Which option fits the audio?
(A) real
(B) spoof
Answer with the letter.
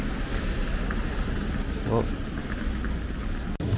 A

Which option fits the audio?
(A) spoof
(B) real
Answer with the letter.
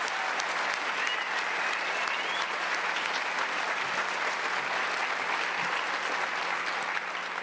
B